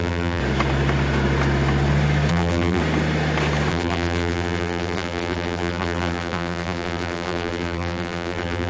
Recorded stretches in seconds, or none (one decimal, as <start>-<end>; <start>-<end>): 0.4-2.3; 2.8-3.7